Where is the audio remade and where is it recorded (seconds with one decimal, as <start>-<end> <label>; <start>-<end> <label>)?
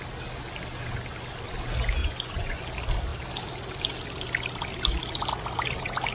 0.0-2.0 recorded; 2.0-2.6 remade; 2.6-6.1 recorded